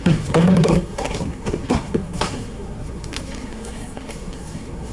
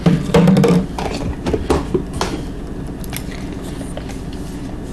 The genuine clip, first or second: second